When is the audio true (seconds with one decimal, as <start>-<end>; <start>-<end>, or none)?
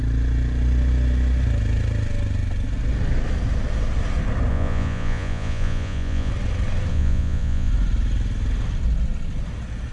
0.0-4.5; 6.3-6.9; 7.7-9.9